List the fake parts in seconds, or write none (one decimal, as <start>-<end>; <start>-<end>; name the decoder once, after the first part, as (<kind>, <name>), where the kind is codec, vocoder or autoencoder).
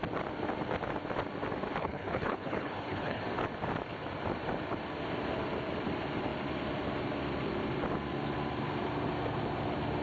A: 1.8-3.2 (codec, HILCodec)